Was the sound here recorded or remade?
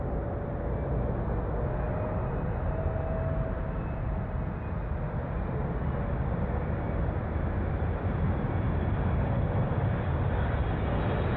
recorded